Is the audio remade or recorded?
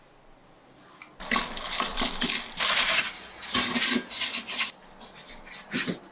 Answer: recorded